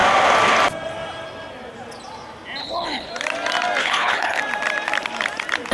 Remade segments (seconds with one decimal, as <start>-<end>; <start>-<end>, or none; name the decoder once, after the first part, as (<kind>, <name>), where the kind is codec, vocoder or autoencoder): 2.6-3.1 (codec, HILCodec); 3.8-4.4

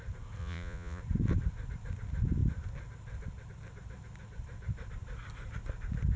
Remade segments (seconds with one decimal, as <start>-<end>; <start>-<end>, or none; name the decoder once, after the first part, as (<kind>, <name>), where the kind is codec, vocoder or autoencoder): 0.4-1.0 (vocoder, Vocos)

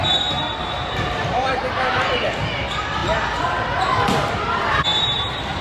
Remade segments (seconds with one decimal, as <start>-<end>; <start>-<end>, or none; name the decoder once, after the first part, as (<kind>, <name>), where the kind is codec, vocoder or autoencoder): 3.0-4.6 (vocoder, BigVGAN v2)

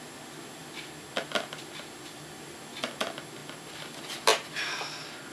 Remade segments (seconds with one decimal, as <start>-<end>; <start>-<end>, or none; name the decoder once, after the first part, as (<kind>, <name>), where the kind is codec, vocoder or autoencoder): none

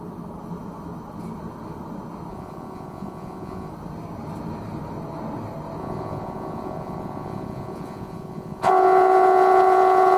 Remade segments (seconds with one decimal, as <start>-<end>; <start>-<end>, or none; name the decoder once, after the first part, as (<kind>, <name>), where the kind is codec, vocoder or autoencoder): 2.3-3.7 (vocoder, Vocos); 5.8-10.2

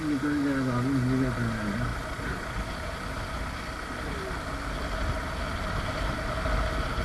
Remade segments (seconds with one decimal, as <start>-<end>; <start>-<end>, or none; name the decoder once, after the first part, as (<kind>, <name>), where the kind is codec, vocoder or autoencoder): none

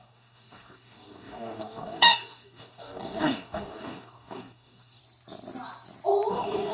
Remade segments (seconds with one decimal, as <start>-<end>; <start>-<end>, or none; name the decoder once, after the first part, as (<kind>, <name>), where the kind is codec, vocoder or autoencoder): 0.0-5.0 (codec, DAC); 6.3-6.7